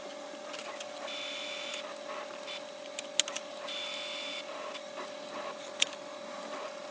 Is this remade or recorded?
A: recorded